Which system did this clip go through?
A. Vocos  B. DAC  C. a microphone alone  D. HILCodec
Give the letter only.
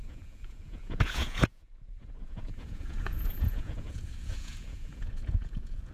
A